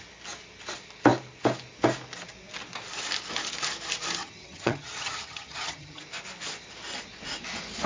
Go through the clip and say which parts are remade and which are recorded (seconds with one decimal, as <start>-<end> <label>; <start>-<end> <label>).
0.0-4.2 recorded; 4.2-6.0 remade; 6.0-7.9 recorded